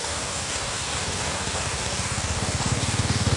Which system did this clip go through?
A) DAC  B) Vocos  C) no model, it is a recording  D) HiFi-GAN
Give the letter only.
A